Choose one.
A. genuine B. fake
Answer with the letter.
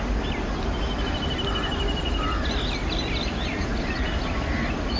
A